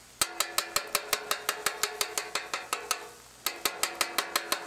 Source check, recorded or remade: recorded